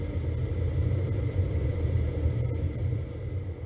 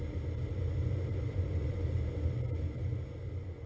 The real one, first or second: second